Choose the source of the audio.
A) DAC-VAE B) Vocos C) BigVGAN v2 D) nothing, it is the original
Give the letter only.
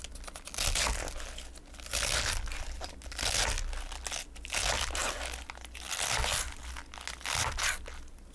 D